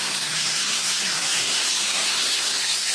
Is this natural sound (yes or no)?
no